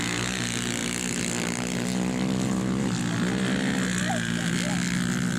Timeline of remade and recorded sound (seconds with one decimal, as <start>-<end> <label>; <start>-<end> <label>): 0.0-5.4 recorded